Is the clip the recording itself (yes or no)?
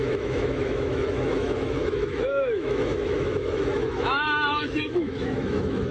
no